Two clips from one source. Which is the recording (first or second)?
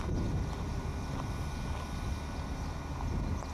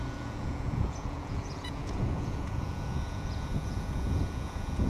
first